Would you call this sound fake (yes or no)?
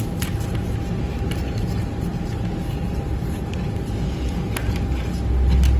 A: no